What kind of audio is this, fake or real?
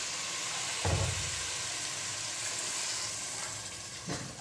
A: real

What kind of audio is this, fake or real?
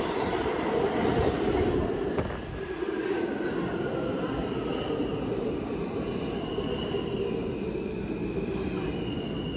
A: real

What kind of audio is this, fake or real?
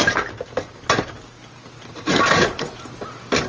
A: real